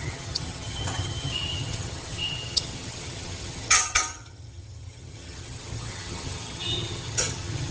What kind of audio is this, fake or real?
fake